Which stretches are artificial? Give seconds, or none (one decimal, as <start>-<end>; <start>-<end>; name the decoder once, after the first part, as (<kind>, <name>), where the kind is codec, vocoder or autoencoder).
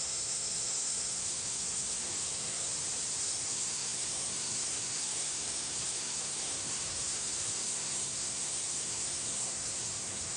0.0-2.7 (codec, SNAC); 3.2-10.4